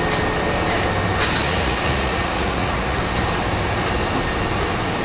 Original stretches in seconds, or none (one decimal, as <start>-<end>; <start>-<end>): 0.0-1.4; 3.0-5.0